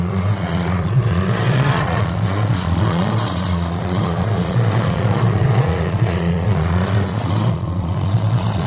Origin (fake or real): fake